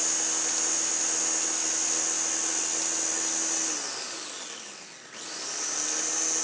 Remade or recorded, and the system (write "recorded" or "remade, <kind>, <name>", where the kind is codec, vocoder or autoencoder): recorded